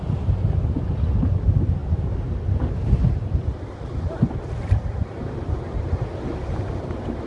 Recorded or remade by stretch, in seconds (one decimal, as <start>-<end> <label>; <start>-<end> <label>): 0.0-7.3 recorded